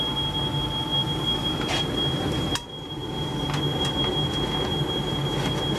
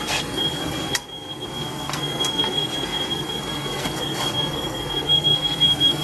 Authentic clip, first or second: first